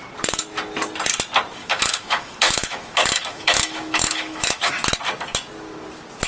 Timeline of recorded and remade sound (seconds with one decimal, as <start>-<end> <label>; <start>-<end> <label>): 0.0-1.6 recorded; 1.6-4.7 remade; 4.7-6.3 recorded